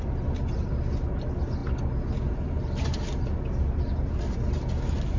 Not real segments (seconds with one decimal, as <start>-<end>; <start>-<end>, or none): none